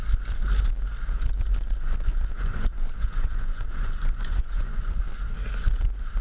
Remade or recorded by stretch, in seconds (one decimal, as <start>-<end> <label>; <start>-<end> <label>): 0.0-2.1 recorded; 2.1-5.0 remade; 5.0-6.2 recorded